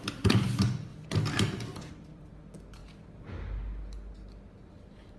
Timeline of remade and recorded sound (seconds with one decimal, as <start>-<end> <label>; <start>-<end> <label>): 0.0-0.9 recorded; 0.9-2.3 remade; 2.3-5.2 recorded

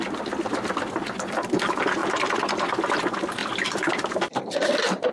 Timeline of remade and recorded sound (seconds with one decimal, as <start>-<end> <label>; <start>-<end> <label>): 0.0-3.4 recorded; 3.4-5.1 remade